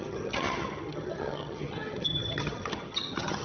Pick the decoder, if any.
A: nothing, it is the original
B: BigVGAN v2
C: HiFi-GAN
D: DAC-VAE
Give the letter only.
C